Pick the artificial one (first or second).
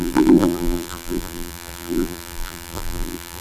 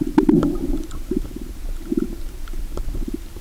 first